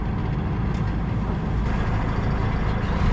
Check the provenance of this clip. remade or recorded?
recorded